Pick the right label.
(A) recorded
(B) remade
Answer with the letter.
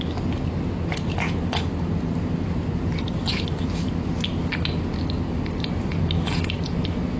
A